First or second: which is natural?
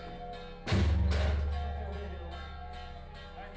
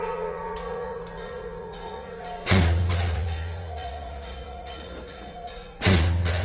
first